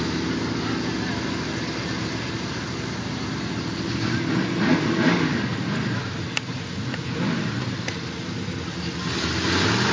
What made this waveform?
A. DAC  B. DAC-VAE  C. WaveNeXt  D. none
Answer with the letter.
D